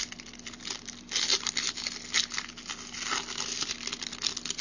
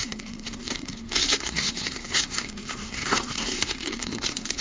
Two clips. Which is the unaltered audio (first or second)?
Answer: first